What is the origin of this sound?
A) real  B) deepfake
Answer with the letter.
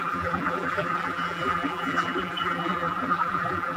B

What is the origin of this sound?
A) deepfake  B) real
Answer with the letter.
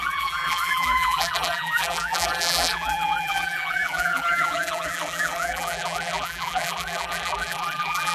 A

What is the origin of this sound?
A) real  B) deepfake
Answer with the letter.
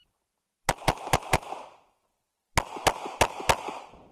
A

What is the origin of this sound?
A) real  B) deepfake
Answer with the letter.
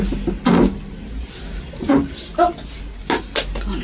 A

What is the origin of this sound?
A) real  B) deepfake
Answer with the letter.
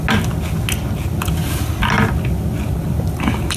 A